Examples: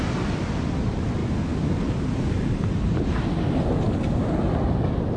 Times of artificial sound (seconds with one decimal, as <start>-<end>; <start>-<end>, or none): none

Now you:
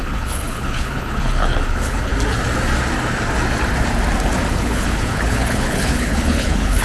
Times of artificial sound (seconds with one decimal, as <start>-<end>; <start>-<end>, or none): 0.0-2.1; 4.5-6.8

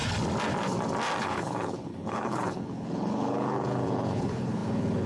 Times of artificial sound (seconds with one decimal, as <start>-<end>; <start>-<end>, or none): 1.2-5.1